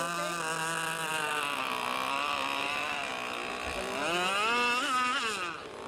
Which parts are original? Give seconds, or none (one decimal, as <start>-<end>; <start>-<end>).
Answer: 0.0-1.1; 3.1-5.9